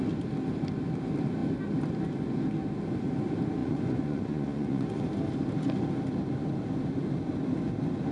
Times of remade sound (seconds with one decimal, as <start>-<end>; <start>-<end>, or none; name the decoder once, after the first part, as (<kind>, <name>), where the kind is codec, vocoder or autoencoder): 3.6-5.0 (vocoder, Vocos)